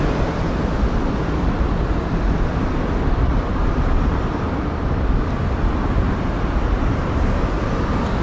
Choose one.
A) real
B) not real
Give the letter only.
A